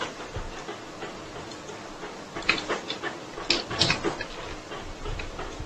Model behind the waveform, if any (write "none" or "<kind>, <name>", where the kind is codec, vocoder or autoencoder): none